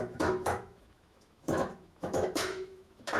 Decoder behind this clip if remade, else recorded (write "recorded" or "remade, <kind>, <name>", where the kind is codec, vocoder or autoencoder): remade, autoencoder, DAC-VAE